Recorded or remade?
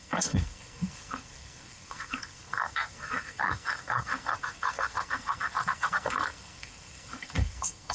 remade